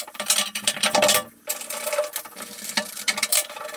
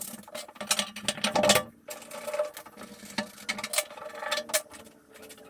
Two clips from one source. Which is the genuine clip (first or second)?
second